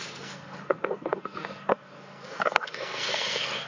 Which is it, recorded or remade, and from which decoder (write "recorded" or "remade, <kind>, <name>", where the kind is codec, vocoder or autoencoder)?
remade, codec, SNAC